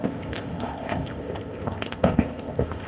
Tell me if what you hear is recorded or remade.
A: remade